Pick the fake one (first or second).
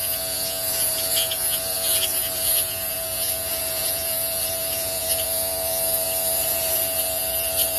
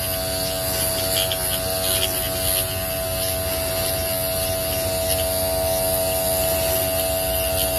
first